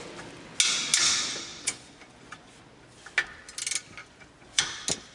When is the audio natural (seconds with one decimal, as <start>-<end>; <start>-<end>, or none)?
0.0-1.5; 2.6-4.0; 4.6-5.1